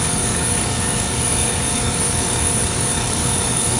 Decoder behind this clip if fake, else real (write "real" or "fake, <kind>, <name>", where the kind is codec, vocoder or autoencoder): fake, codec, DAC